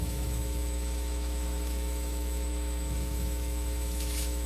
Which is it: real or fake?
fake